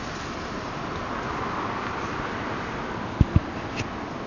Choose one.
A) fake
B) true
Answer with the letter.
B